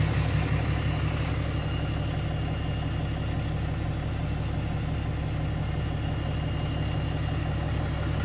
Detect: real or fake real